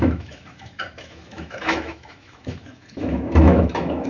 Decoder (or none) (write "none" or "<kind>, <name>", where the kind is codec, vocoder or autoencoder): autoencoder, DAC-VAE